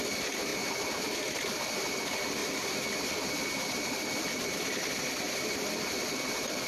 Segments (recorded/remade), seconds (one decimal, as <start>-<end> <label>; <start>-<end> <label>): 0.0-6.7 recorded